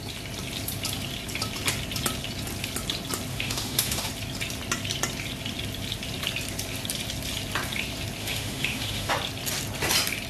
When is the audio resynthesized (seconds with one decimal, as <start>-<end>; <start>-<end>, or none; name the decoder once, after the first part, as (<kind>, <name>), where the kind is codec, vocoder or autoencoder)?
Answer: 3.3-4.1 (autoencoder, DAC-VAE); 8.2-9.1